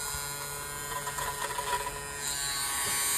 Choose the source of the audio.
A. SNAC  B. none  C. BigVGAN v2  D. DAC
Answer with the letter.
B